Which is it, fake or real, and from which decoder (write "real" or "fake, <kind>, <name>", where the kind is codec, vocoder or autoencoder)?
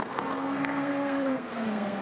fake, codec, SNAC